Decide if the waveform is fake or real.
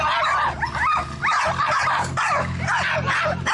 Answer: real